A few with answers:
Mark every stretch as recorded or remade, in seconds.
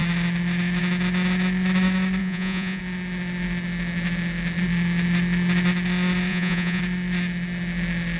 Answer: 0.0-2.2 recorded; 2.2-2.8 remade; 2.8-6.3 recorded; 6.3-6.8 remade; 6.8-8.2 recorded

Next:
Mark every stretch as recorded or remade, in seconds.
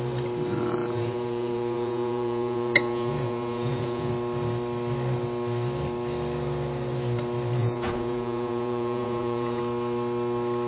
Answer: 0.0-0.8 recorded; 0.8-4.1 remade; 4.1-7.6 recorded; 7.6-9.6 remade; 9.6-10.7 recorded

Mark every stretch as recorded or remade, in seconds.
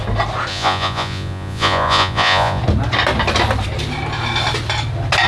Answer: 0.0-0.5 recorded; 0.5-2.6 remade; 2.6-5.3 recorded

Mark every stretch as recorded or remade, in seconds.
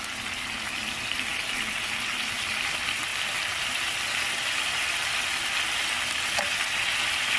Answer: 0.0-7.4 recorded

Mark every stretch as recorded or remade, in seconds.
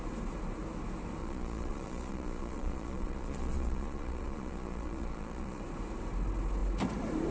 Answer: 0.0-1.2 recorded; 1.2-5.6 remade; 5.6-7.3 recorded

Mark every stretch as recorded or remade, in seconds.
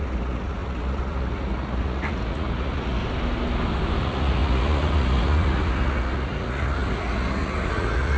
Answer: 0.0-3.0 remade; 3.0-4.0 recorded; 4.0-8.2 remade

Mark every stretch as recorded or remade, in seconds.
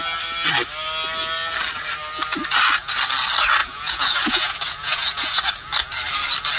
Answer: 0.0-3.6 recorded; 3.6-5.5 remade; 5.5-6.6 recorded